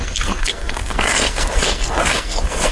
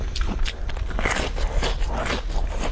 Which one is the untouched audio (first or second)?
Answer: second